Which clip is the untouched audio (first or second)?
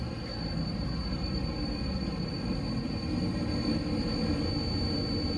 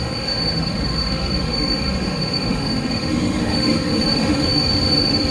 first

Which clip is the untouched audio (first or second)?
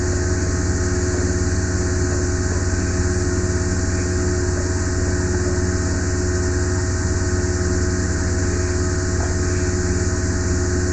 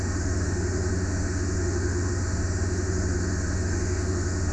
first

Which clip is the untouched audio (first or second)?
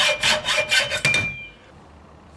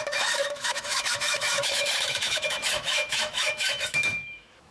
first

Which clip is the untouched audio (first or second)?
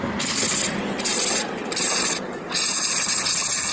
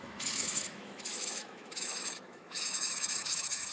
first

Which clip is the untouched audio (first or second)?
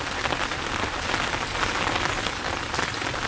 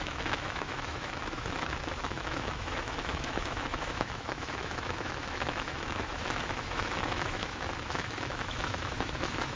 first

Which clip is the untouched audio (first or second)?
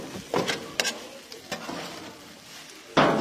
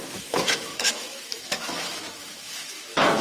first